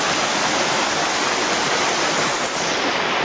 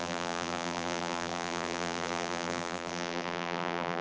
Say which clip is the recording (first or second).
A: first